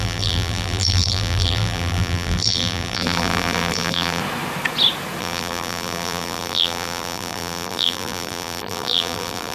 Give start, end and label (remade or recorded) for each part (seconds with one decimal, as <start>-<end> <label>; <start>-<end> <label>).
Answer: 0.0-4.2 remade; 4.2-5.2 recorded; 5.2-9.5 remade